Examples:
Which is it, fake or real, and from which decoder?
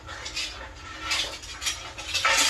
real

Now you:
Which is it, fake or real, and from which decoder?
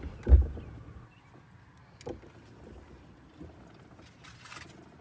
real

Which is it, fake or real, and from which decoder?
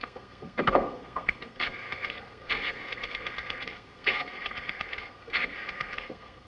fake, codec, SNAC